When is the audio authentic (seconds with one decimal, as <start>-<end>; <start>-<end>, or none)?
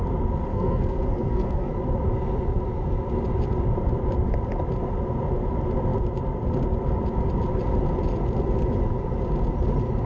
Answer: 0.0-0.5; 1.7-10.1